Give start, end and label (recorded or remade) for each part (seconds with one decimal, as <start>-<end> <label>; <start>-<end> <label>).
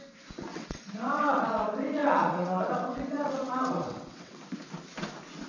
0.0-0.5 recorded; 0.5-1.5 remade; 1.5-2.0 recorded; 2.0-4.4 remade; 4.4-5.5 recorded